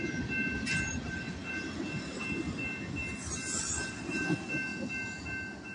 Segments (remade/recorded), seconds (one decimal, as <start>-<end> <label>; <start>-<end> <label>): 0.0-5.7 recorded